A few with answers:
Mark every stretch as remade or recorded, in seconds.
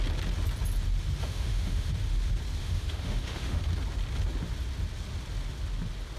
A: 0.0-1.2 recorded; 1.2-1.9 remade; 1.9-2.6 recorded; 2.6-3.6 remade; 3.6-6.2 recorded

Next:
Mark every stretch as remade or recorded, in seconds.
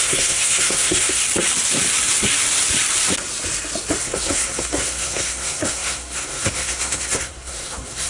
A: 0.0-1.2 remade; 1.2-4.0 recorded; 4.0-8.1 remade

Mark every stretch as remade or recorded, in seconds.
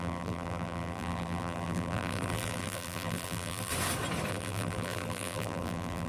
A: 0.0-3.7 remade; 3.7-4.3 recorded; 4.3-6.1 remade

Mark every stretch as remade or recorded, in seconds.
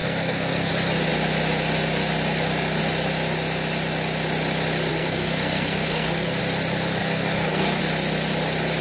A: 0.0-0.7 remade; 0.7-4.9 recorded; 4.9-6.4 remade; 6.4-7.0 recorded; 7.0-7.8 remade; 7.8-8.8 recorded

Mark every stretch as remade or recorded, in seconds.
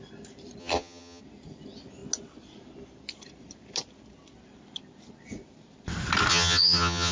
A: 0.0-0.6 recorded; 0.6-1.2 remade; 1.2-6.3 recorded; 6.3-7.1 remade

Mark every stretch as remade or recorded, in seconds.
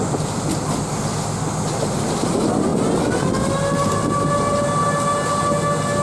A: 0.0-6.0 recorded